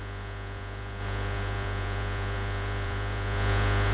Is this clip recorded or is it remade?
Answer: remade